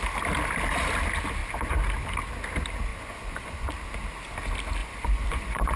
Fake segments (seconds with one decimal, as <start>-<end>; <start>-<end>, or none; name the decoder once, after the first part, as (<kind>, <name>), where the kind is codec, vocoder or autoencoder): 2.9-3.7 (vocoder, Vocos); 4.8-5.8